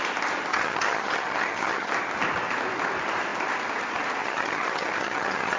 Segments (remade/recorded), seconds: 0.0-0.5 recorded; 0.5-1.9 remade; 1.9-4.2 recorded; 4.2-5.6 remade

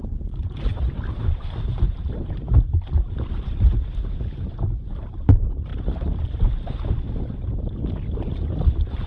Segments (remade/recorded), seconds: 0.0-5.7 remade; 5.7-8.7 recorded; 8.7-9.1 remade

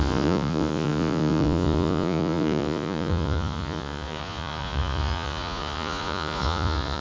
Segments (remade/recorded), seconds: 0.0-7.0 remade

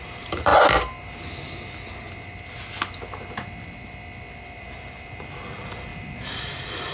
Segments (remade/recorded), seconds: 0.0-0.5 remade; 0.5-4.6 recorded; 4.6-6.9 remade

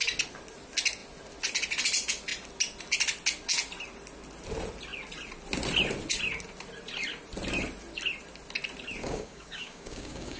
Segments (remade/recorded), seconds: 0.0-9.0 recorded; 9.0-10.4 remade

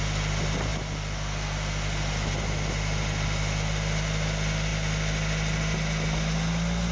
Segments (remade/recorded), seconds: 0.0-6.9 recorded